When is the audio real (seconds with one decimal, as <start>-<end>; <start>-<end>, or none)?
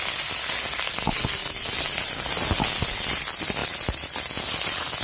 0.0-5.0